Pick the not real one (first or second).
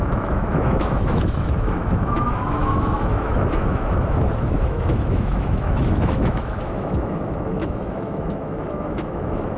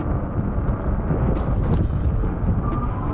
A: first